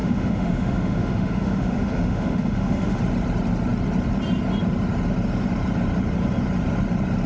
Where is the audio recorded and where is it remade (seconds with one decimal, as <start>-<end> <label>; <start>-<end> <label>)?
0.0-3.0 remade; 3.0-7.3 recorded

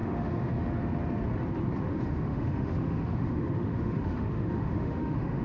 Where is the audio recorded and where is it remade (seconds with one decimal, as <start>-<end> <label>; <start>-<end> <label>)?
0.0-0.6 remade; 0.6-1.9 recorded; 1.9-5.4 remade

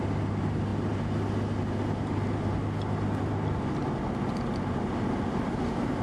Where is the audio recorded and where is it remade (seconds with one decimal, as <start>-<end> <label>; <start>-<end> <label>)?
0.0-6.0 recorded

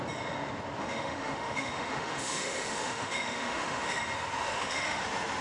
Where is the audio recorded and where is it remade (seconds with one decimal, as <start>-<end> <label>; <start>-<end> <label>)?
0.0-0.8 recorded; 0.8-4.0 remade; 4.0-4.4 recorded; 4.4-5.0 remade; 5.0-5.4 recorded